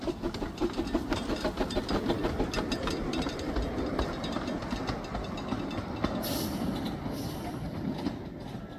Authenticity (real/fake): real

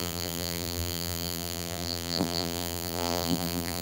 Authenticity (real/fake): fake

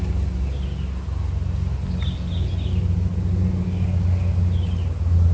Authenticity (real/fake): real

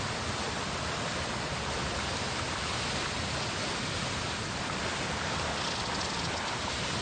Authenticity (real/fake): real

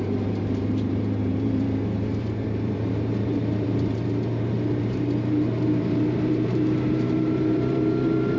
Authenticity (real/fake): fake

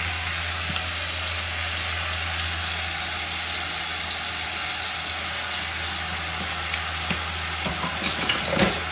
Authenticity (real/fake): real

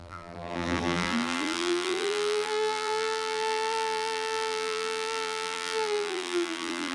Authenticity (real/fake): fake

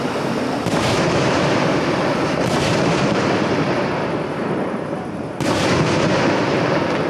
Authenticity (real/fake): fake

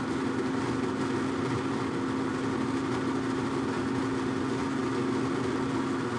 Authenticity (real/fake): real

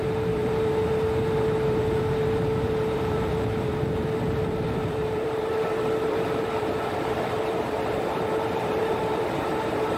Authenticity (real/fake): fake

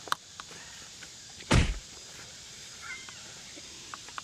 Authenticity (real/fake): fake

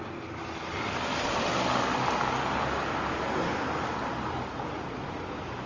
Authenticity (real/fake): real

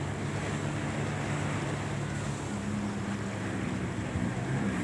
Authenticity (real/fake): real